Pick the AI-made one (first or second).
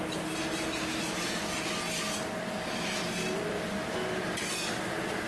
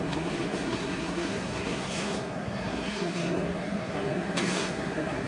second